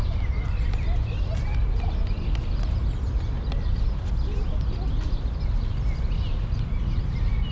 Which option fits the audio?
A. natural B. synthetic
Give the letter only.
A